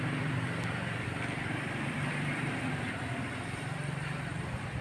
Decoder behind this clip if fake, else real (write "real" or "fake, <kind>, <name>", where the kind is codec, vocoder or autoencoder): fake, vocoder, BigVGAN v2